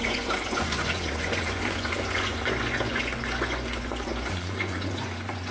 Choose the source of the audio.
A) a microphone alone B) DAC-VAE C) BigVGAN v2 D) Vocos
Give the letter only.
D